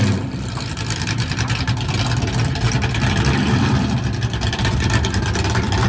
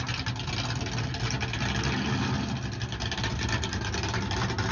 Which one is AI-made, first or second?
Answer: first